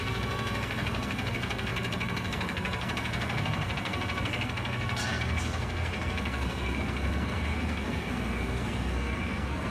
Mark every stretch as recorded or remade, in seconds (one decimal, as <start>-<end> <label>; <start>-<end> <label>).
0.0-9.7 remade